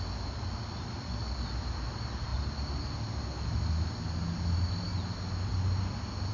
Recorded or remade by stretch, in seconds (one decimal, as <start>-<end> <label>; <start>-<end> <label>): 0.0-6.3 recorded